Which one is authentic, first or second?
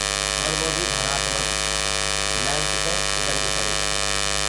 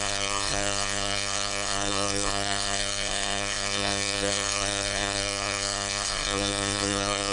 first